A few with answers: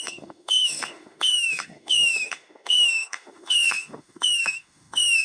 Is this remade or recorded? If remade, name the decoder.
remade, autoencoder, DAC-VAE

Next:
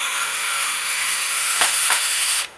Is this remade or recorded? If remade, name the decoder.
remade, autoencoder, DAC-VAE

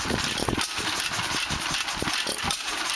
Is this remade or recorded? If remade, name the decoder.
recorded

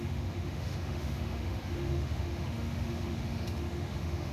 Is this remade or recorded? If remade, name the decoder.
remade, autoencoder, DAC-VAE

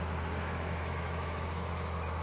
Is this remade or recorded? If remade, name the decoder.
remade, autoencoder, DAC-VAE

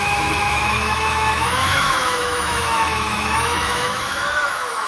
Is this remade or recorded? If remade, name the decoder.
remade, autoencoder, DAC-VAE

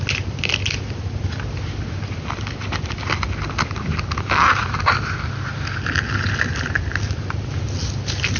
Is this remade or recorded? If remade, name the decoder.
recorded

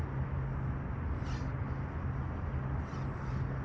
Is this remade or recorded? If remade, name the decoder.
recorded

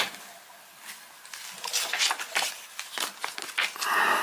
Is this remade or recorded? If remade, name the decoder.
recorded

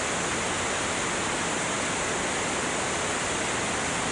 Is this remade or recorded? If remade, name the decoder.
recorded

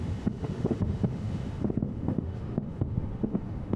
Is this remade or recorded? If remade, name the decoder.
remade, autoencoder, DAC-VAE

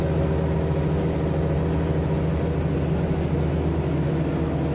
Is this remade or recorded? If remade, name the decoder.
recorded